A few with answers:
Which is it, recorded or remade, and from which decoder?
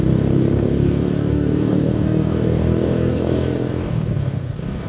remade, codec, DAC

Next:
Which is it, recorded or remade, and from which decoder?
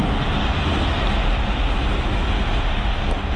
recorded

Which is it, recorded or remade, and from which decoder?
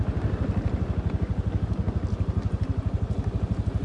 recorded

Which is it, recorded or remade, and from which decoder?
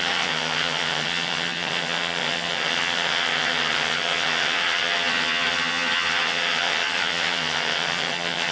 remade, vocoder, HiFi-GAN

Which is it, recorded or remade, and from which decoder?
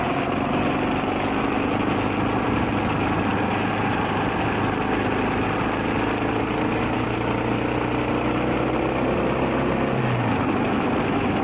recorded